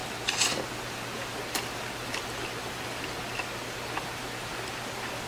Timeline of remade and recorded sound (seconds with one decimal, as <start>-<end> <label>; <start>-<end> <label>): 0.0-5.3 recorded